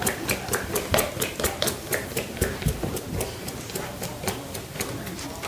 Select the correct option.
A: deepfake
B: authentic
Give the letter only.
B